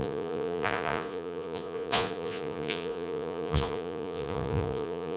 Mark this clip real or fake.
fake